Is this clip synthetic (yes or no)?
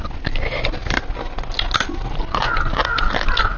no